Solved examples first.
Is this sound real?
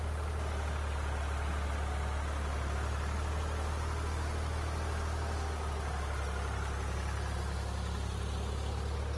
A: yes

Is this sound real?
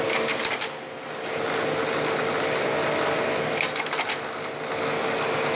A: yes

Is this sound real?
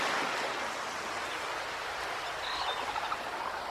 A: yes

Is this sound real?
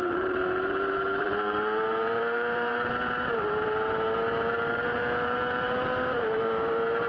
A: no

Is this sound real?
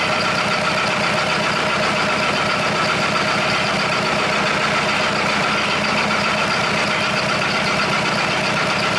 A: yes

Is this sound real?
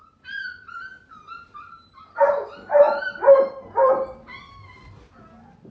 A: yes